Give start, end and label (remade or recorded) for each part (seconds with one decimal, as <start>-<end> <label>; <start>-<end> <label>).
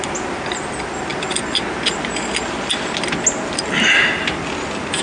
0.0-5.0 recorded